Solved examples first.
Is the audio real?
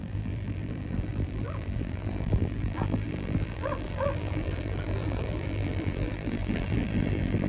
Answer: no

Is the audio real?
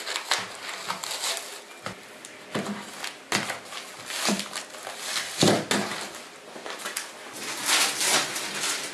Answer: yes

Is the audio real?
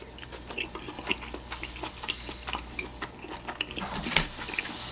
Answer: yes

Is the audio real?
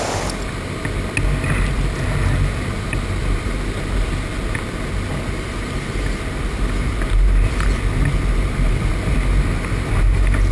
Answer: yes